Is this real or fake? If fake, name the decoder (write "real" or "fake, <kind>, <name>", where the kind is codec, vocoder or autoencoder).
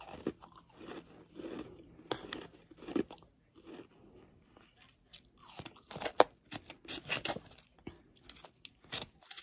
real